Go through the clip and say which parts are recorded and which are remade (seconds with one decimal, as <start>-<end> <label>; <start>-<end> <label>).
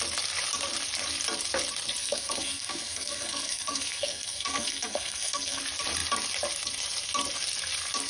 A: 0.0-2.0 recorded; 2.0-5.6 remade; 5.6-8.1 recorded